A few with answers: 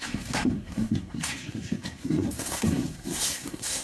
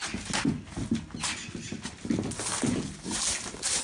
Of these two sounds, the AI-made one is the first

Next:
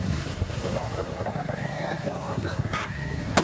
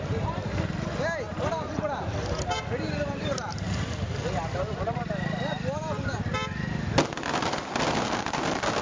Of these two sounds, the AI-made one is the first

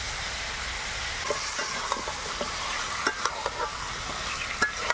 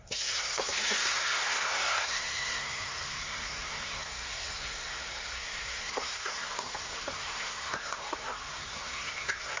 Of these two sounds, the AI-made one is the second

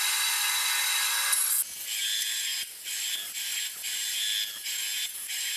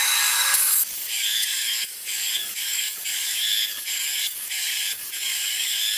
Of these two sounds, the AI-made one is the second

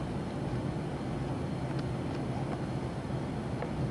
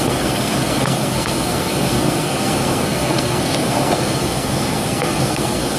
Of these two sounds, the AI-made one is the second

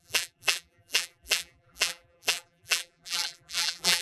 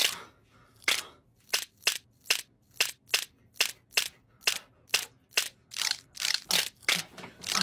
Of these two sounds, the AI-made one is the first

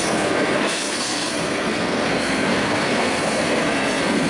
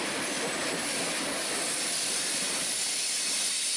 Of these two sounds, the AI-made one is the first